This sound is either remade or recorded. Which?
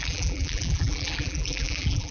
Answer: remade